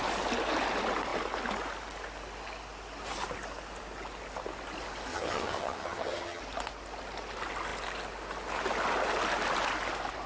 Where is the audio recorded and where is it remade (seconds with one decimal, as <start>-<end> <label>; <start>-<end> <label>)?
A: 0.0-5.1 recorded; 5.1-6.4 remade; 6.4-10.3 recorded